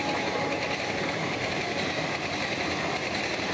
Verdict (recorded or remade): recorded